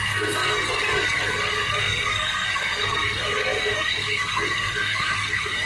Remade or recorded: remade